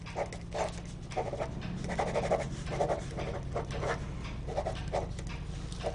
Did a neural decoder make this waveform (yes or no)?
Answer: no